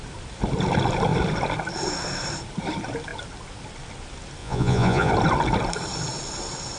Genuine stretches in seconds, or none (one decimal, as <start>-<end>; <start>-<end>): 0.0-4.4; 5.1-6.8